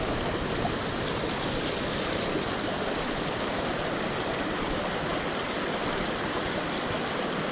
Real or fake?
real